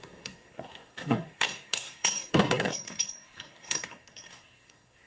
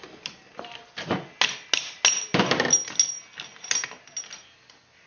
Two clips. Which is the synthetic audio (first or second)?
first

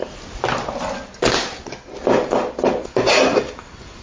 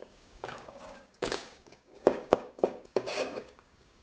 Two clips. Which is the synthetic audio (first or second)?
second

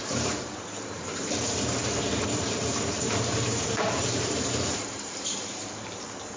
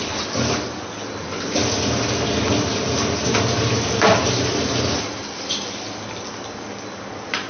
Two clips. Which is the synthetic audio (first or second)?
first